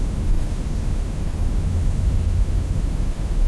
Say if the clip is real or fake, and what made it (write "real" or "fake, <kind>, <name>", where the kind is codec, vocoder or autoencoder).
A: fake, autoencoder, DAC-VAE